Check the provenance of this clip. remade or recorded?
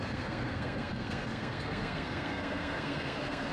remade